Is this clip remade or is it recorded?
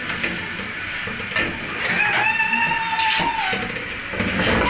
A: recorded